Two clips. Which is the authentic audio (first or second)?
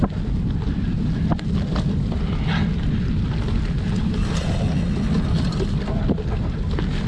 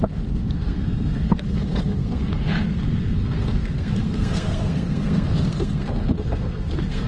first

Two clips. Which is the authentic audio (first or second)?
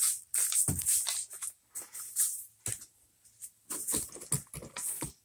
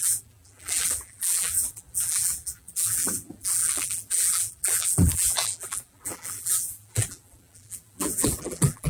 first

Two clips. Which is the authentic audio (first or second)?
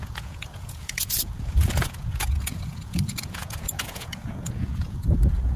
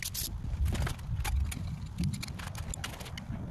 second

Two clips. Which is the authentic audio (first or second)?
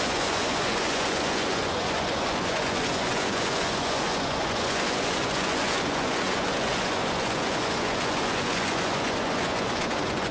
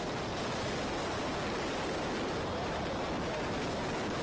second